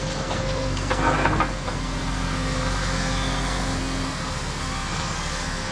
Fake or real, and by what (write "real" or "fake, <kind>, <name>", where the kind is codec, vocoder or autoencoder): fake, codec, SNAC